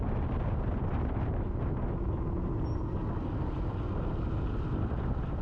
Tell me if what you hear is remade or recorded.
recorded